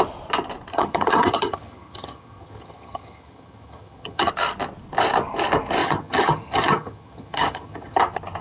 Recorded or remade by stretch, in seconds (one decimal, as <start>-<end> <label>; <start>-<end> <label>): 0.0-0.7 recorded; 0.7-4.3 remade; 4.3-5.8 recorded; 5.8-8.0 remade; 8.0-8.4 recorded